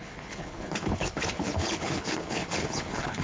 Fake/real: fake